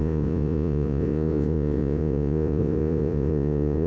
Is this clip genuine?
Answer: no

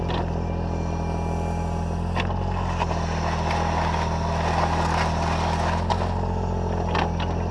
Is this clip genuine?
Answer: yes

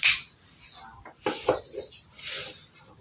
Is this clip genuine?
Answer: yes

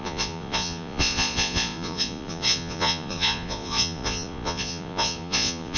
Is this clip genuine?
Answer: no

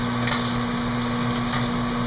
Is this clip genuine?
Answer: yes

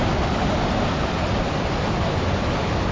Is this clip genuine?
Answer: yes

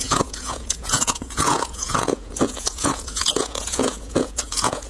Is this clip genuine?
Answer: no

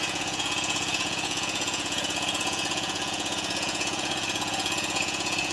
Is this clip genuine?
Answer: no